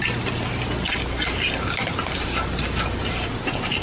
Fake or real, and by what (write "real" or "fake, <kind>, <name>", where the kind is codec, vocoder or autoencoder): real